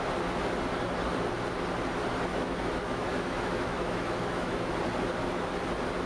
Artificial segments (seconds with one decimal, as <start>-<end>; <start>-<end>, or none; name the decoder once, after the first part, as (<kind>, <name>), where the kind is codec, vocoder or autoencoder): 2.3-4.7 (autoencoder, DAC-VAE)

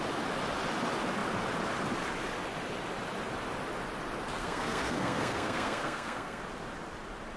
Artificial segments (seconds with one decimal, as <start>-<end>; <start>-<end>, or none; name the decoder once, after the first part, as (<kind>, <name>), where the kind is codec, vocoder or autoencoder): 4.4-6.4 (codec, SNAC)

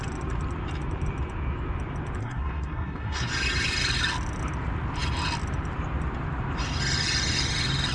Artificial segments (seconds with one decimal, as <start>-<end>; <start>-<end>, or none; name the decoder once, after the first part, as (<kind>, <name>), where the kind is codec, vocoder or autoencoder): 2.2-3.3 (codec, SNAC)

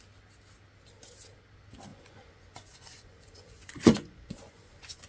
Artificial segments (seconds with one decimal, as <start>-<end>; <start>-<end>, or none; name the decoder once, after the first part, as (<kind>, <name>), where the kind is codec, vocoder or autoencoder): 1.9-5.1 (vocoder, Vocos)